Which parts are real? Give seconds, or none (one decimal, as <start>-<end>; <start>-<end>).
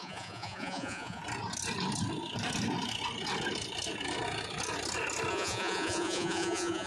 1.2-5.3